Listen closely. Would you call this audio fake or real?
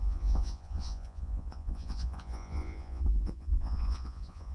fake